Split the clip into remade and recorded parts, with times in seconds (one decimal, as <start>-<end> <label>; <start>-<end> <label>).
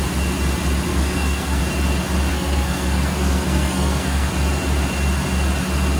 0.0-0.9 recorded; 0.9-1.6 remade; 1.6-2.3 recorded; 2.3-4.3 remade; 4.3-6.0 recorded